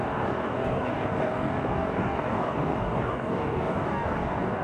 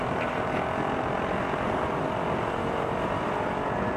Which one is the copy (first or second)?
first